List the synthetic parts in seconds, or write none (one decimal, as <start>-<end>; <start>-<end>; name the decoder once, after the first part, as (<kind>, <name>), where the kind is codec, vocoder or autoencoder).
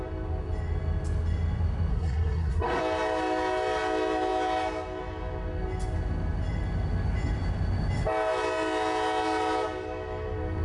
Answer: 1.9-2.8 (codec, SNAC)